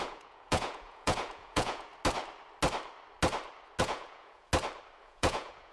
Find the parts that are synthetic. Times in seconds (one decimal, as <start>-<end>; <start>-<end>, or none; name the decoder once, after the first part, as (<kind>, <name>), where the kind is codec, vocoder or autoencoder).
0.0-1.9 (vocoder, Vocos); 3.8-4.5; 5.0-5.7